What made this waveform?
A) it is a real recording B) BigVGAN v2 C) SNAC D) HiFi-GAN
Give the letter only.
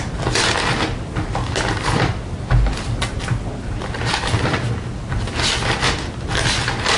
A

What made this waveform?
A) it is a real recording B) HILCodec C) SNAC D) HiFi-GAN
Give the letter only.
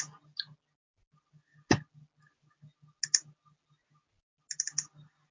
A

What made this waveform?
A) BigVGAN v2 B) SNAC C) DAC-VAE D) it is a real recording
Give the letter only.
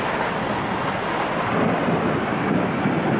D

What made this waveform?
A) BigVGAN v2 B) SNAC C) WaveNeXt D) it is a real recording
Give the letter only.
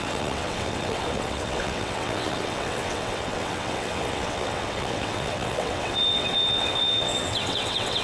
C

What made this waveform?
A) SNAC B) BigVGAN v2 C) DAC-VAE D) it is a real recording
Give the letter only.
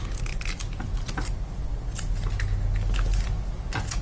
D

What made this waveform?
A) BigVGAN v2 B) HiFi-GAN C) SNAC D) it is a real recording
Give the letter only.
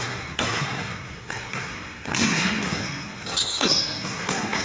C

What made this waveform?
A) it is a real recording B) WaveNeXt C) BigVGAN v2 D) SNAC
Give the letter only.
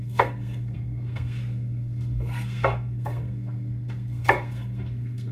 D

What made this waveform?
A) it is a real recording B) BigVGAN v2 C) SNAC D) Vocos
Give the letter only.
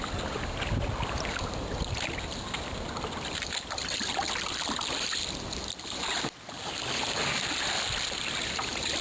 A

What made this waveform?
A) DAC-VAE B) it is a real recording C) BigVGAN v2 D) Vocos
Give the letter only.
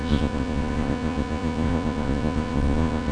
D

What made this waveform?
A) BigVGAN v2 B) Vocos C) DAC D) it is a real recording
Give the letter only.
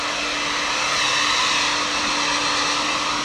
D